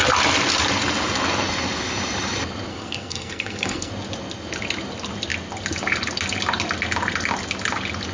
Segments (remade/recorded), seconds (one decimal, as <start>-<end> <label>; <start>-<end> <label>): 0.0-2.7 recorded; 2.7-3.9 remade; 3.9-8.1 recorded